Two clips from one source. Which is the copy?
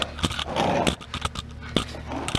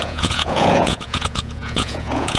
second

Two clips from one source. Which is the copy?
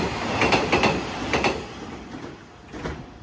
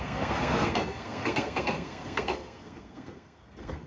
second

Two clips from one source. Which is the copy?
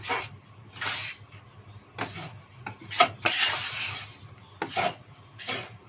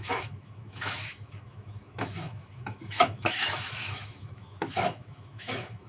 second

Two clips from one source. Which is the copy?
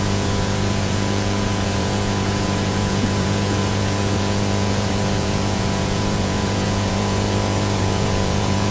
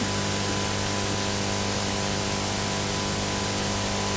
first